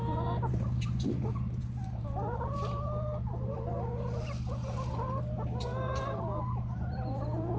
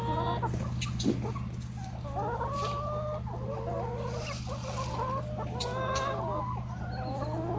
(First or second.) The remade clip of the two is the first